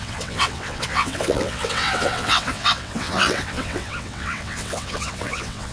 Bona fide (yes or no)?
no